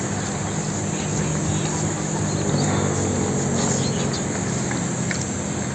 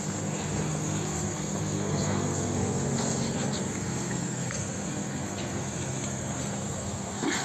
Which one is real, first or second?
first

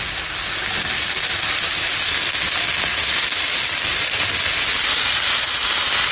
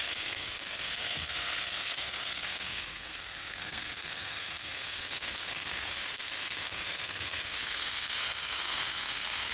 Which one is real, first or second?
first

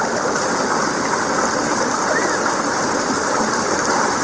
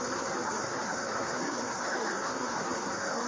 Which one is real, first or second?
first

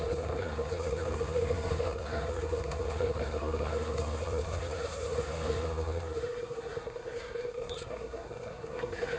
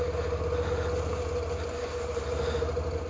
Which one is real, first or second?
second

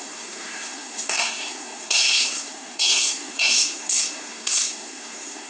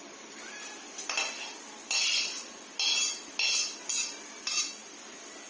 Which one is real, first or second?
second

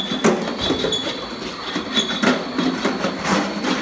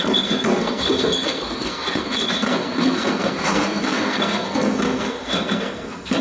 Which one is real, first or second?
first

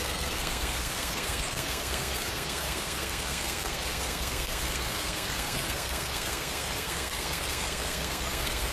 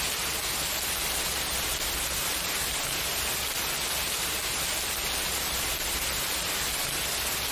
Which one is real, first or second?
second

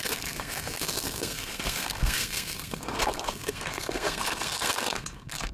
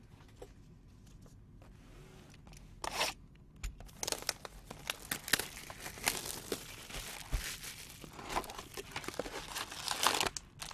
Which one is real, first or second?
second